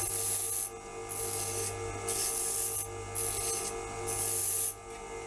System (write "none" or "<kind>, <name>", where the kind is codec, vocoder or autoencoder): none